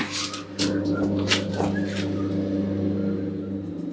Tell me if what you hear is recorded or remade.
recorded